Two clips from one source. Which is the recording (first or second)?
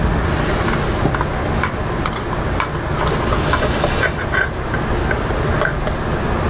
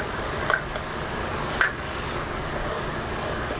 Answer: first